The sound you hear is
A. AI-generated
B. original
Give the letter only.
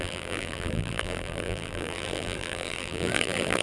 A